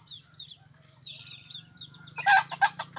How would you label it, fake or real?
fake